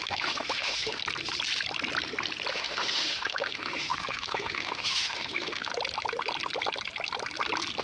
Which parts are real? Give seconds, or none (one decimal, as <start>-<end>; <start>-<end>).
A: 1.0-2.5; 5.7-7.8